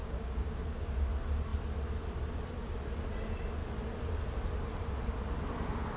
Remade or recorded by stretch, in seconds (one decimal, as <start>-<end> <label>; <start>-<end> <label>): 0.0-1.1 remade; 1.1-6.0 recorded